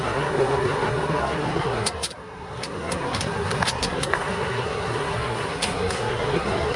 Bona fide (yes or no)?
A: no